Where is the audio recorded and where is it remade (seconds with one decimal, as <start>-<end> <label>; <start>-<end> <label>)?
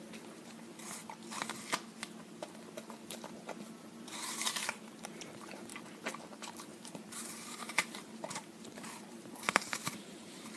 0.0-1.0 remade; 1.0-3.8 recorded; 3.8-5.7 remade; 5.7-6.3 recorded; 6.3-10.6 remade